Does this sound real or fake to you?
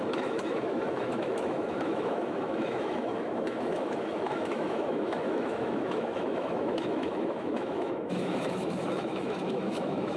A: fake